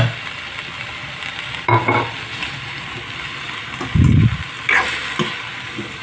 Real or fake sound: real